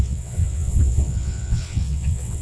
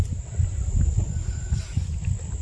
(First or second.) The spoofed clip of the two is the first